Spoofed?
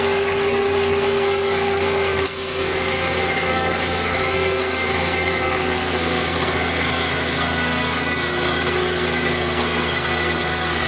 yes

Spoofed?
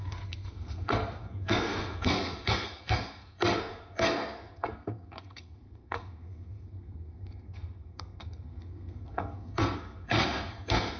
yes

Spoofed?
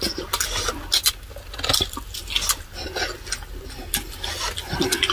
no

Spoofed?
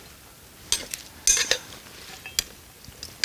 no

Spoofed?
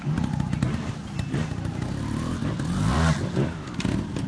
no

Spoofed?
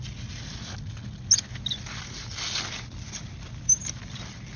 no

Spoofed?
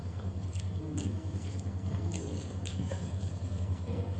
yes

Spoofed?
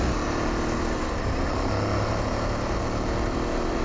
no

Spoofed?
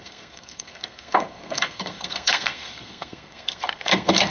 yes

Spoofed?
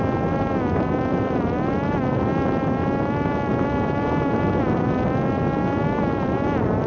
no